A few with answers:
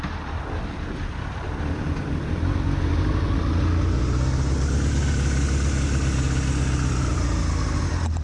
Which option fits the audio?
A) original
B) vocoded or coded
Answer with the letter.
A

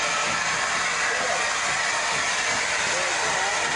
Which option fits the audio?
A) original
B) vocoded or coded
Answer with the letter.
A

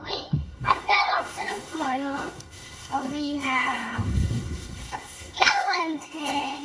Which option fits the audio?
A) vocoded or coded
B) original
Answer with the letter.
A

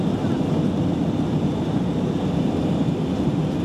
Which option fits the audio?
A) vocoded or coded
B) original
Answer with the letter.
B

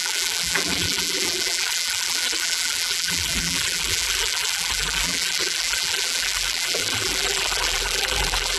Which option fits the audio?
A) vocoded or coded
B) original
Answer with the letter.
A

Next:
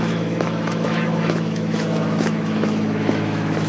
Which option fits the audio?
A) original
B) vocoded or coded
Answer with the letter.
B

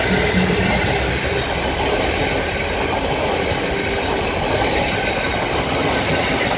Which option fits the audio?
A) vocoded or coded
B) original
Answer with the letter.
B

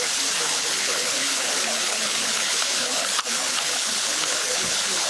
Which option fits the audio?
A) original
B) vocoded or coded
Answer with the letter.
B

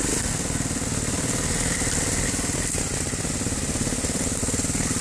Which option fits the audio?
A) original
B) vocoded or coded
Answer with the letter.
A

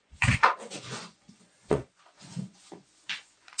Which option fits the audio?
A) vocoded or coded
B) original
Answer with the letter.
A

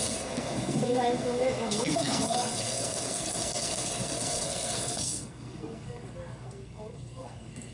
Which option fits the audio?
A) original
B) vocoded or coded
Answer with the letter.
B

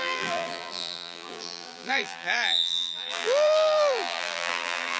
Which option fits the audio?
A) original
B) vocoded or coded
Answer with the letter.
B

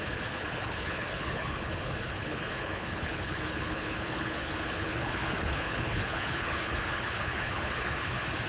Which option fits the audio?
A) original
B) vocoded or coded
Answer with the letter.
B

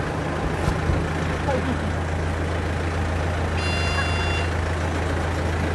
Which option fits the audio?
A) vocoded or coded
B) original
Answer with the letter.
B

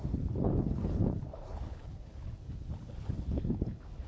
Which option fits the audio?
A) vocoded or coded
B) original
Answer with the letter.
A